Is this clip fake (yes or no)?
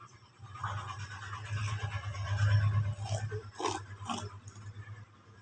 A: no